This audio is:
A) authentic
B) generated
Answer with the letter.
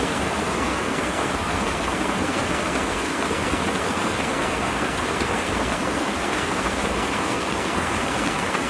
B